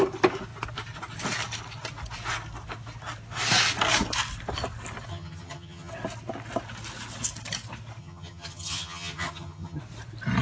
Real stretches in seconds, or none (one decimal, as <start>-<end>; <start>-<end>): 0.0-5.1; 5.9-8.0; 9.8-10.4